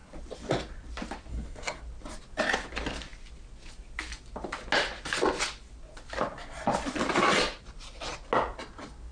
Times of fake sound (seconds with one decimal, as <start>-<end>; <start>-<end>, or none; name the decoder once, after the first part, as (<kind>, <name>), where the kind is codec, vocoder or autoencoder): 1.3-1.8 (codec, SNAC)